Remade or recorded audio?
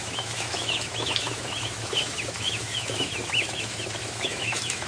remade